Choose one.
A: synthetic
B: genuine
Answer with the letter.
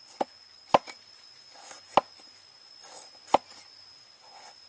B